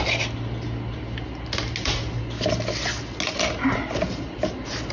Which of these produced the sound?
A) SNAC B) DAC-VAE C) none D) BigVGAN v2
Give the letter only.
C